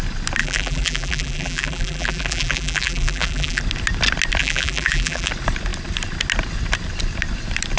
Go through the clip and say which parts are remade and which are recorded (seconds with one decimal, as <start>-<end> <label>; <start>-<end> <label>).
0.0-0.4 recorded; 0.4-3.6 remade; 3.6-4.4 recorded; 4.4-5.3 remade; 5.3-7.8 recorded